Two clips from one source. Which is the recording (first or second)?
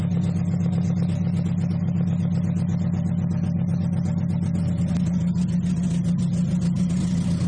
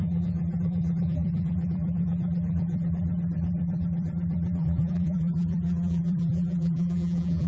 first